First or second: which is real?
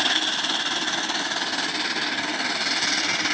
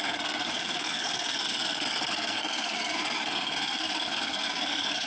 first